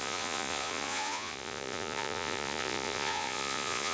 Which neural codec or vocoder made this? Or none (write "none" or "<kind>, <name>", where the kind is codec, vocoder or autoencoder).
vocoder, Vocos